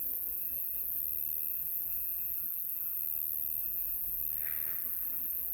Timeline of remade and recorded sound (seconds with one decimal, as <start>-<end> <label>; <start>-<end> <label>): 0.0-1.0 remade; 1.0-1.5 recorded; 1.5-3.0 remade; 3.0-3.6 recorded; 3.6-4.2 remade; 4.2-4.7 recorded; 4.7-5.5 remade